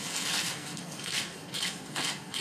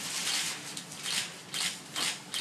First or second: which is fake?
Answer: first